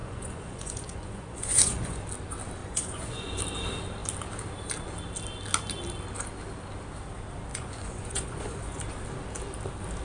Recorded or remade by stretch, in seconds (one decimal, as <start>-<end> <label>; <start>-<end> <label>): 0.0-2.0 remade; 2.0-2.6 recorded; 2.6-3.4 remade; 3.4-7.5 recorded; 7.5-8.8 remade; 8.8-10.0 recorded